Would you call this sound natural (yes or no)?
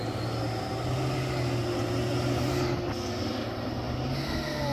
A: yes